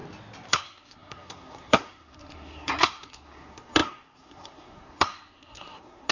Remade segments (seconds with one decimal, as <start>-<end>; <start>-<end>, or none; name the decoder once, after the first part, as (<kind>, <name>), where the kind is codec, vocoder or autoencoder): 0.5-6.1 (codec, SNAC)